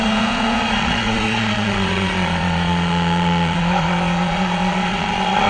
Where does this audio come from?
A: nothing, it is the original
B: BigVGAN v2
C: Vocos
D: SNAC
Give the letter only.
C